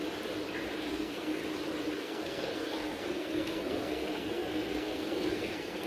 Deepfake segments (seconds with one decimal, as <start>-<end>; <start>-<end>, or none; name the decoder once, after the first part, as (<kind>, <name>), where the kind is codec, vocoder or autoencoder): 0.9-1.4 (codec, SNAC); 2.0-5.9